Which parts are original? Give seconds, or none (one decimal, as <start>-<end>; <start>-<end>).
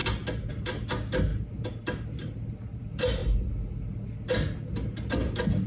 0.0-5.7